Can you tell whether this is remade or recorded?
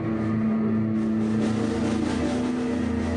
recorded